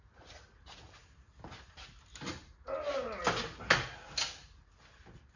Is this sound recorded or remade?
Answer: recorded